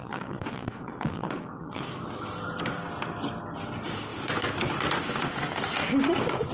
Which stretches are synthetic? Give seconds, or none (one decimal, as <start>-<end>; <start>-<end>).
0.0-1.8